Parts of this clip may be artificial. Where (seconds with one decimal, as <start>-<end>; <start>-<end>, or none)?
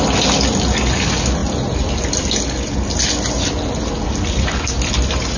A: none